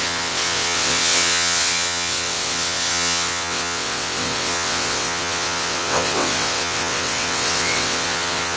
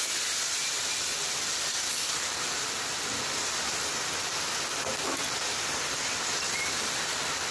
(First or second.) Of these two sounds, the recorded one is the second